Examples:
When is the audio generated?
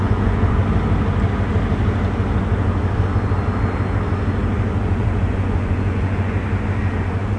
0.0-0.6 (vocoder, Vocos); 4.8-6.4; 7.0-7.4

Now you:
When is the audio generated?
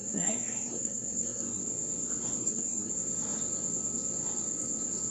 0.0-1.6 (codec, SNAC); 2.4-2.9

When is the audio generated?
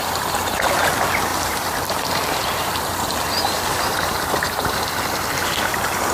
1.3-5.0 (vocoder, BigVGAN v2)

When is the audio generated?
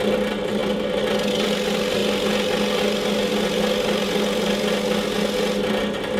none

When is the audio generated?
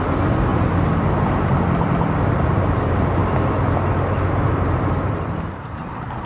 0.0-0.5 (vocoder, BigVGAN v2); 1.1-1.5; 2.4-3.2; 4.4-6.3